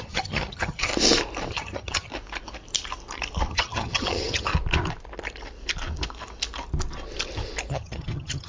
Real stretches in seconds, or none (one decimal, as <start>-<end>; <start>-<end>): 0.9-1.5; 2.1-3.5; 4.5-7.7